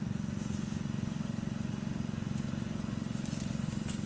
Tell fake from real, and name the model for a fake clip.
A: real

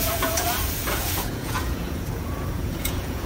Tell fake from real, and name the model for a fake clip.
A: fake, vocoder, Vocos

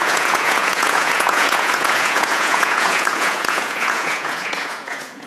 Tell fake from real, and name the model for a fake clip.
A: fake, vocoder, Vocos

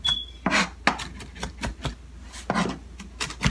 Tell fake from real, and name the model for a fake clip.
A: real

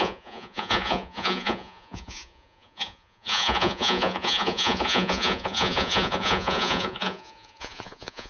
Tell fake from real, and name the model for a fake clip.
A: fake, vocoder, Vocos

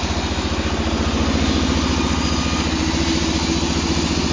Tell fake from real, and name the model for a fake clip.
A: real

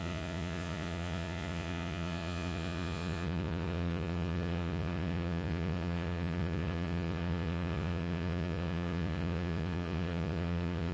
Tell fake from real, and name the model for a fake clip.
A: fake, vocoder, Vocos